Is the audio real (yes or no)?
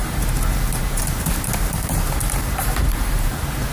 no